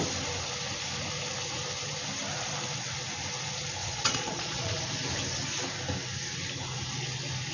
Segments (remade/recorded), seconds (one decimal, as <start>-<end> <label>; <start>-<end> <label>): 0.0-3.8 recorded; 3.8-4.7 remade; 4.7-7.5 recorded